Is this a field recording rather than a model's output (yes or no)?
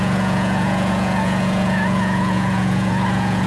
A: no